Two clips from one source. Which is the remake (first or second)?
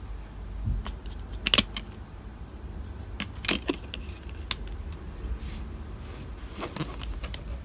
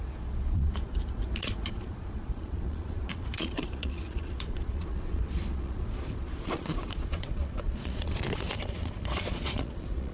second